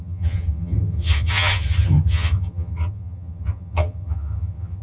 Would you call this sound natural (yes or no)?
no